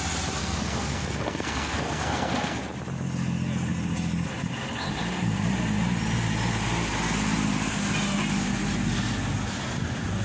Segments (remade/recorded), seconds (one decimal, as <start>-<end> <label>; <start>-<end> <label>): 0.0-0.4 recorded; 0.4-2.6 remade; 2.6-10.2 recorded